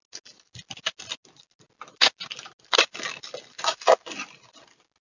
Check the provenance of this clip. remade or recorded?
recorded